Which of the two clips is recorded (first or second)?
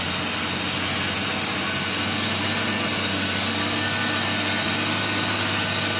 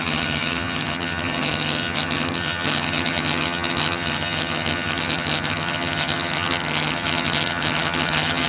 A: first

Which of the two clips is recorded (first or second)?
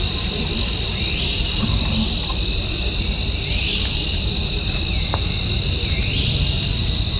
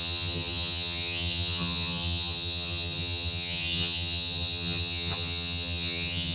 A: first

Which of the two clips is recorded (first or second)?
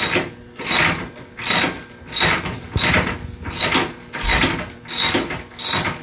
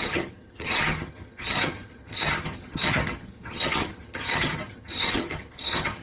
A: first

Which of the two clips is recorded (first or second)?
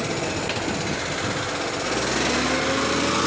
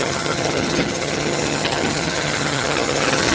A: first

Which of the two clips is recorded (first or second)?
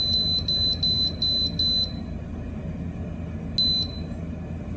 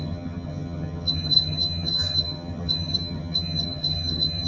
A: first